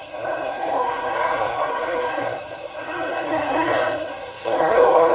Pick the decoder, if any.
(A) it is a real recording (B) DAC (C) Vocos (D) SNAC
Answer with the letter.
D